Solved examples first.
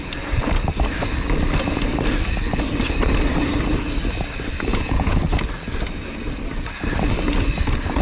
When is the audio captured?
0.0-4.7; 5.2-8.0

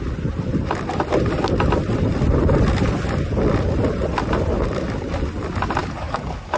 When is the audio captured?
0.0-5.8

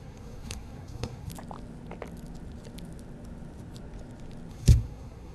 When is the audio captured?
1.3-4.5

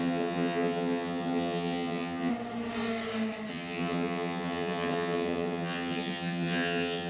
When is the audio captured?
2.3-3.5

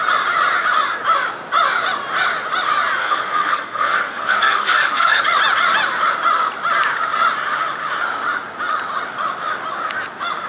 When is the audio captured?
0.0-3.0; 5.2-10.5

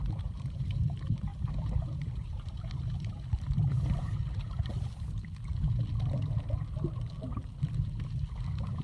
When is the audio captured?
4.7-8.4

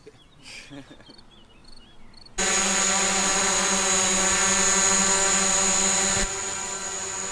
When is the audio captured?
0.0-7.3

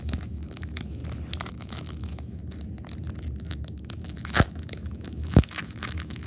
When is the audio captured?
1.0-1.5; 2.4-3.4